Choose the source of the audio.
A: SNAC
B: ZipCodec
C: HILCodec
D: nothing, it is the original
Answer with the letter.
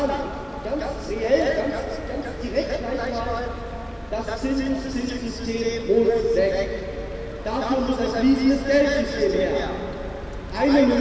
D